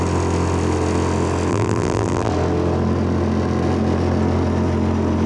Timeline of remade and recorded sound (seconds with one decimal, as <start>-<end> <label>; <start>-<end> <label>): 0.0-1.5 recorded; 1.5-2.3 remade; 2.3-5.3 recorded